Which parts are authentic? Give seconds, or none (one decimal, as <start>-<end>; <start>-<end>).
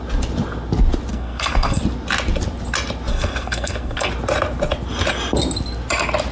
0.0-1.1; 1.8-3.1; 4.1-6.3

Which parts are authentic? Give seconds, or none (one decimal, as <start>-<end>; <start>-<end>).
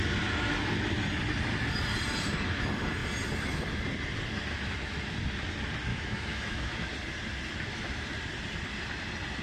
0.0-5.9; 6.9-9.4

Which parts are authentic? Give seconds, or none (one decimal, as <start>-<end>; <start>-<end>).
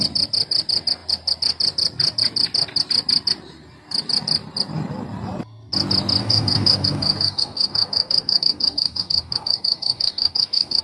0.0-6.2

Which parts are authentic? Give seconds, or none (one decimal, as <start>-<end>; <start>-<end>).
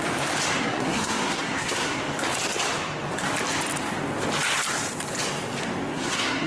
0.0-0.6; 2.0-5.9